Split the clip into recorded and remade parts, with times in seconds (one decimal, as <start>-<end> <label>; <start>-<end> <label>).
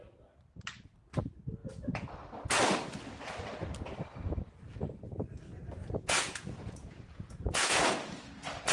0.0-5.8 recorded; 5.8-7.9 remade; 7.9-8.7 recorded